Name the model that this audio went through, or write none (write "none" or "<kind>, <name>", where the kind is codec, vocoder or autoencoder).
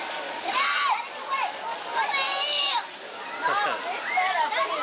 none